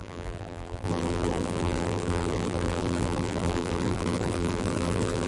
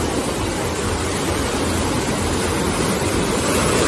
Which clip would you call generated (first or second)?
first